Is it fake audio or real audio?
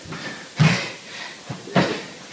real